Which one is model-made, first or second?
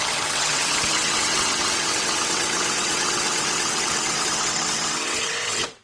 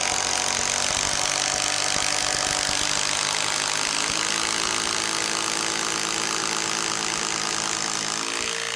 first